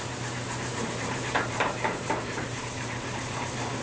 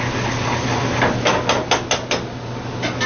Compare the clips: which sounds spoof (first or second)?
first